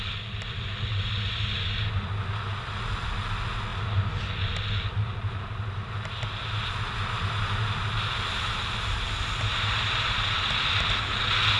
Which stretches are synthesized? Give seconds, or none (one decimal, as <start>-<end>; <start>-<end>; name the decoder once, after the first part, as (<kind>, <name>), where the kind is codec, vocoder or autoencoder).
9.5-10.5 (vocoder, BigVGAN v2)